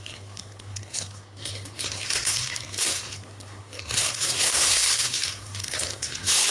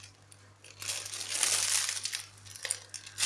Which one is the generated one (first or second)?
first